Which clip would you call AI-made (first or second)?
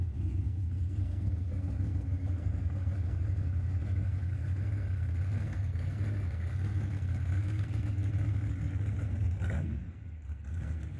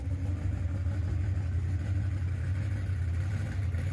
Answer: first